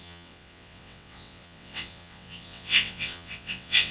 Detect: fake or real fake